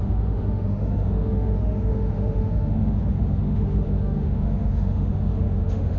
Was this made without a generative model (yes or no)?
no